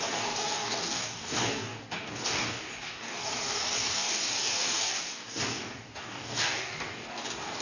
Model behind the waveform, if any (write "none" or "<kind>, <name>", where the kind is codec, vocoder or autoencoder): codec, DAC